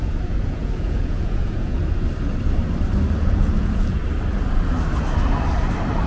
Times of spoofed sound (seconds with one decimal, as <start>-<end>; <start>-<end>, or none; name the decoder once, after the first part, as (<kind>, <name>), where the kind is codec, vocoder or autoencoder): 0.0-1.8 (vocoder, Vocos); 3.2-4.0